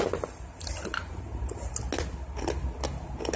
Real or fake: real